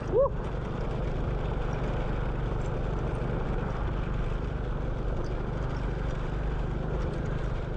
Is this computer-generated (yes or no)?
no